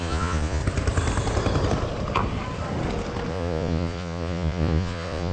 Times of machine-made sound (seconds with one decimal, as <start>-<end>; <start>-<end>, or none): 0.0-0.6; 3.3-5.3

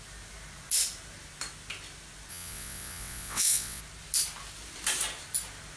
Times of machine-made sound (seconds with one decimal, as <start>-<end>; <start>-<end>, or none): 2.3-3.8